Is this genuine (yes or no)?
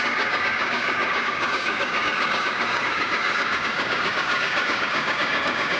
no